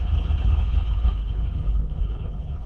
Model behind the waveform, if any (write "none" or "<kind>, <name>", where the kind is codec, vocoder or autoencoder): codec, HILCodec